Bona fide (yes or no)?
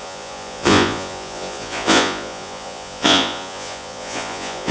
no